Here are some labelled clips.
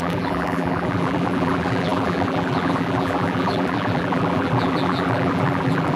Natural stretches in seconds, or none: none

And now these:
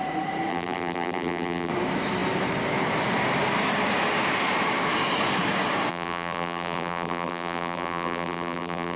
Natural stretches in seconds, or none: 0.0-0.5; 1.7-5.9

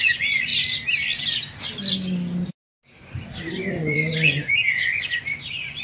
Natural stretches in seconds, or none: 0.5-3.7

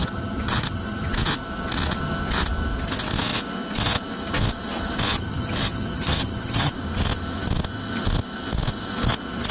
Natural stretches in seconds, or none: 1.1-5.1; 6.7-9.5